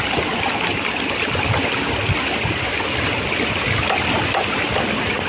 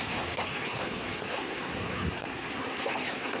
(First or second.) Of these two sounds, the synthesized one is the second